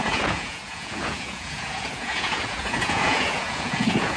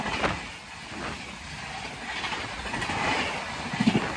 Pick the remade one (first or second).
first